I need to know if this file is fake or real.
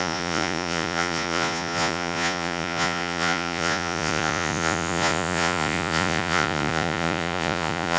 fake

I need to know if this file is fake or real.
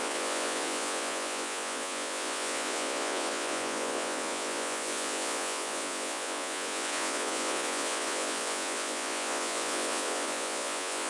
fake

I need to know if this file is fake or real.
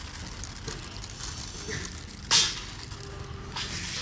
real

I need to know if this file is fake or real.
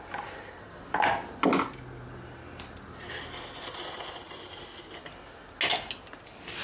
real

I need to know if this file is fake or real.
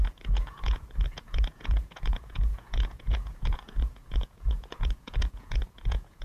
fake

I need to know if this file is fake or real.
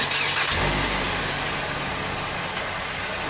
real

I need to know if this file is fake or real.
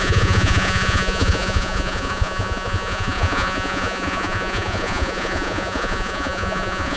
fake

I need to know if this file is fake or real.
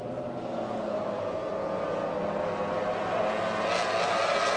real